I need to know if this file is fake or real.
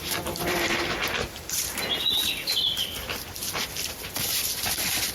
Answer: fake